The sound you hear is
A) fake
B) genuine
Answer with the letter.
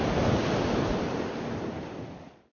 B